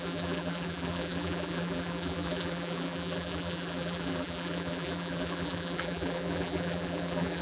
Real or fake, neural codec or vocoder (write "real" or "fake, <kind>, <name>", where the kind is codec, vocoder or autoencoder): fake, vocoder, BigVGAN v2